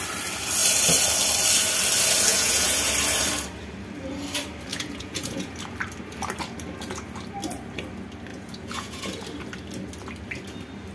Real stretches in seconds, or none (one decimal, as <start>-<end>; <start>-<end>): 0.0-2.3; 2.9-4.7; 5.5-8.3; 9.0-10.9